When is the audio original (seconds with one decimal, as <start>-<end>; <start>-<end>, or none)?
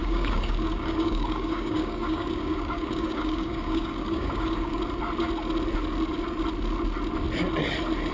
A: 4.8-8.1